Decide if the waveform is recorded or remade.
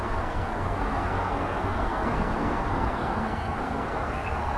remade